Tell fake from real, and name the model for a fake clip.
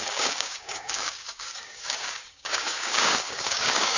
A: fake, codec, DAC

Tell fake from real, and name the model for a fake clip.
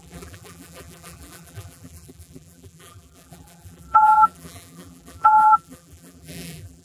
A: fake, vocoder, BigVGAN v2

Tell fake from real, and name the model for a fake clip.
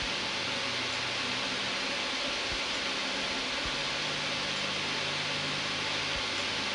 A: real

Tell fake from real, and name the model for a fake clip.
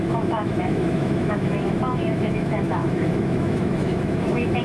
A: fake, autoencoder, DAC-VAE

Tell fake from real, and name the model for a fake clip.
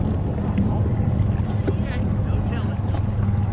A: real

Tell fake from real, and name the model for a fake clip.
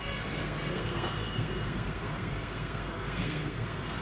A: fake, codec, SNAC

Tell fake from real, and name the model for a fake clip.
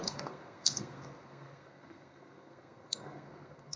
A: fake, codec, SNAC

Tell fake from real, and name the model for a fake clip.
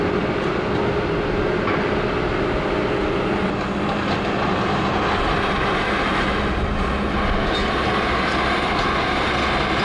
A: real